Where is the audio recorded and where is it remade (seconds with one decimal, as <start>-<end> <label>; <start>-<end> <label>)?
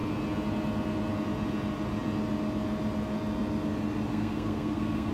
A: 0.0-4.1 recorded; 4.1-5.1 remade